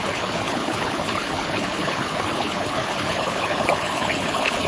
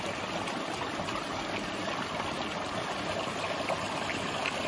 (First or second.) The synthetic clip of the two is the first